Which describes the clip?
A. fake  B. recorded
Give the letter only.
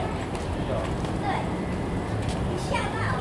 B